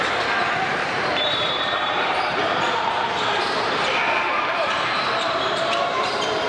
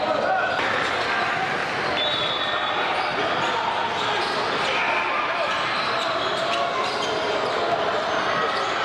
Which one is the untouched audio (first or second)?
second